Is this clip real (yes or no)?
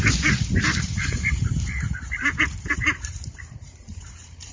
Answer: no